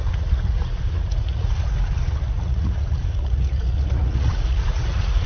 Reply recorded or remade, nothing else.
remade